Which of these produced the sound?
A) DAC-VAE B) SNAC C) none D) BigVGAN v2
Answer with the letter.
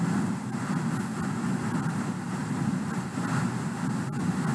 C